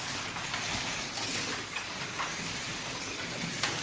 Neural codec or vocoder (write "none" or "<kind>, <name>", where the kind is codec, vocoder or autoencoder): none